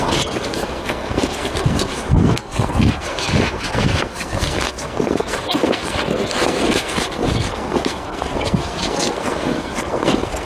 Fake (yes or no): yes